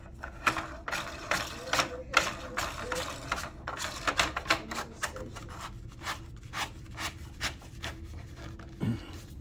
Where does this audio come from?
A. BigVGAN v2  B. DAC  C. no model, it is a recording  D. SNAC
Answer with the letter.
C